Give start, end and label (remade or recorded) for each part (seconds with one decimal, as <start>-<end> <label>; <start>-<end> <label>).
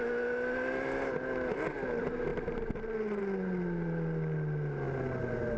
0.0-5.6 recorded